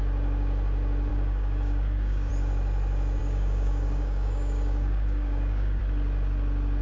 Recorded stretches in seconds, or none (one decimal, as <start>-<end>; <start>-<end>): 0.0-1.1; 2.3-3.2; 5.8-6.8

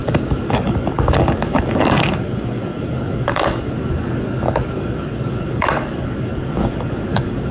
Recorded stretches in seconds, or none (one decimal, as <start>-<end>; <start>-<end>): none